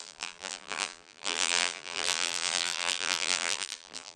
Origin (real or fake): fake